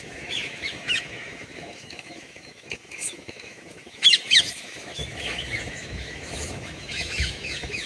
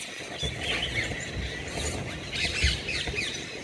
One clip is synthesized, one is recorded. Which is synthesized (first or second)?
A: first